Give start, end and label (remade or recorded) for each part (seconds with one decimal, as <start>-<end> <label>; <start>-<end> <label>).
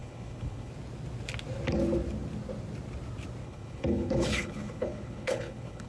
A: 0.0-0.7 remade; 0.7-3.4 recorded; 3.4-5.9 remade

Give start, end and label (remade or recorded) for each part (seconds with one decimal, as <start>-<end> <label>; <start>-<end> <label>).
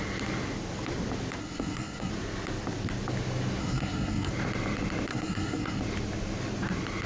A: 0.0-1.4 recorded; 1.4-2.1 remade; 2.1-3.6 recorded; 3.6-4.3 remade; 4.3-5.1 recorded; 5.1-5.8 remade; 5.8-7.1 recorded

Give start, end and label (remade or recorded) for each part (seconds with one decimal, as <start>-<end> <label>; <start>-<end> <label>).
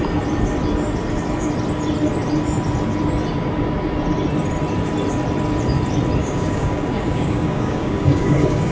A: 0.0-6.2 recorded; 6.2-8.7 remade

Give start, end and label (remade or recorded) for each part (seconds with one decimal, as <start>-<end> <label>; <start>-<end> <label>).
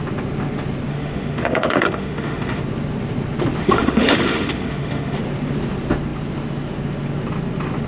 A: 0.0-0.9 recorded; 0.9-2.6 remade; 2.6-3.6 recorded; 3.6-5.2 remade; 5.2-7.9 recorded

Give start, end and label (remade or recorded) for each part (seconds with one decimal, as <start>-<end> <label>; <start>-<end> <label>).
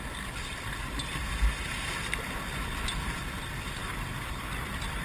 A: 0.0-1.3 remade; 1.3-2.3 recorded; 2.3-5.0 remade